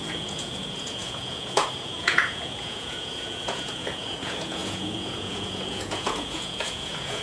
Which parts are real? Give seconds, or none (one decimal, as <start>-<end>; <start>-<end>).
none